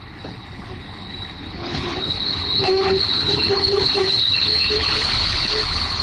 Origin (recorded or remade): remade